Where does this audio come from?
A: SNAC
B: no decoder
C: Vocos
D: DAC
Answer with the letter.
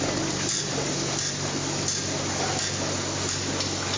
B